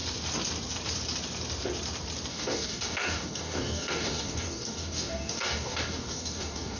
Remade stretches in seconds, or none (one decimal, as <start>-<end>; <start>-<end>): 2.3-6.8